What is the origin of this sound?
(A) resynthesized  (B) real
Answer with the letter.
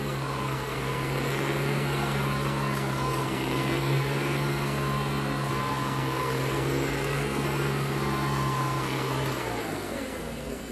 A